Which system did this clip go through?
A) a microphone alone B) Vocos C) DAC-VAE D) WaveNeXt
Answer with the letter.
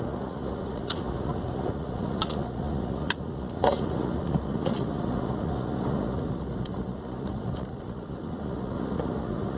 B